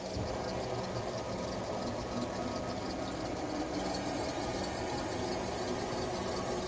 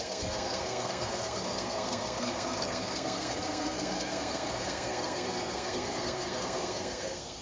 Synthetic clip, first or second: second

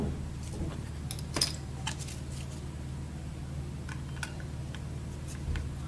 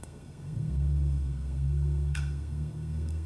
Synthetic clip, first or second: second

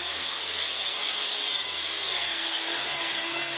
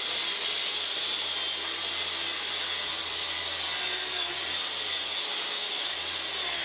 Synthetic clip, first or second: first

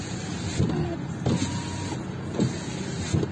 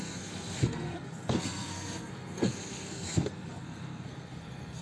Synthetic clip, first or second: second